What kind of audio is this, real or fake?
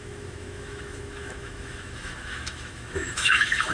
fake